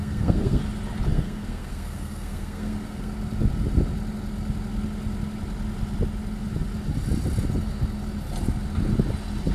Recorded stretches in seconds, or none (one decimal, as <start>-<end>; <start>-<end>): 0.6-1.1; 3.1-9.5